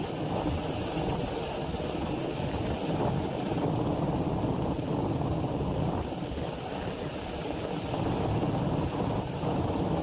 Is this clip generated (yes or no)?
no